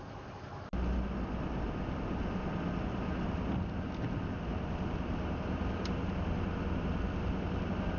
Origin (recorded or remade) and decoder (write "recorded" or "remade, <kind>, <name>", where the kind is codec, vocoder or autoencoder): recorded